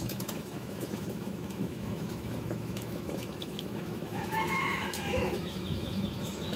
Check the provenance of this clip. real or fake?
fake